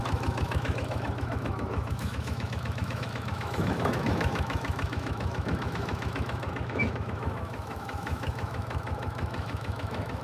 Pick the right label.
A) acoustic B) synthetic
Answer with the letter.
B